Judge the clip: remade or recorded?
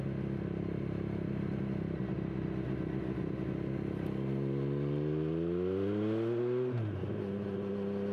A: recorded